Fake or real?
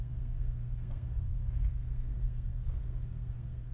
fake